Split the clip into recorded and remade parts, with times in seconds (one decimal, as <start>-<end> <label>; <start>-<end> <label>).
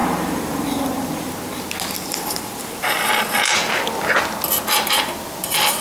0.0-1.3 remade; 1.3-5.8 recorded